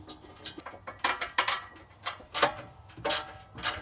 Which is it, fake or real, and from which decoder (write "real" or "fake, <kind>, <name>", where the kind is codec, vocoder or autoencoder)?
real